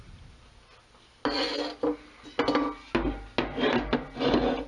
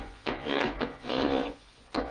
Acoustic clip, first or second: first